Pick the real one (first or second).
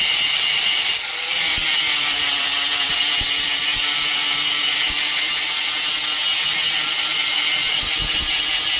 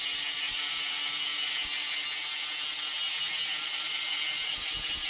second